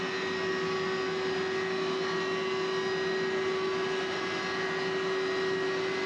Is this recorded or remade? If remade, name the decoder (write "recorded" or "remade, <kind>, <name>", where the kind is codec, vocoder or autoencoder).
recorded